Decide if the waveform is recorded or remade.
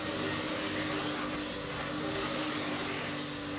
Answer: recorded